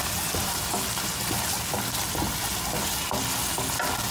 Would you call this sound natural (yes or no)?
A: yes